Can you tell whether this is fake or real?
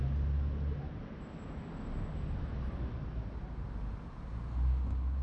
real